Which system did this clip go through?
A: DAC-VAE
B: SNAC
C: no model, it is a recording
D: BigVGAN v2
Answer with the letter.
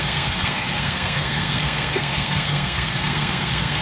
B